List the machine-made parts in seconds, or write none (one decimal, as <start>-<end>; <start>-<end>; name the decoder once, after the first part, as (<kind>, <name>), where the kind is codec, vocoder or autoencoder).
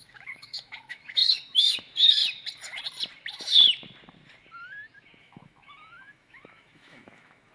0.0-2.2 (autoencoder, DAC-VAE); 5.2-7.5